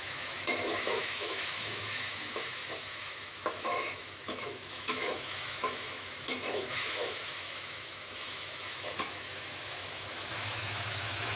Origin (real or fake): fake